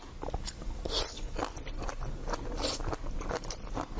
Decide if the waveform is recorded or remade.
recorded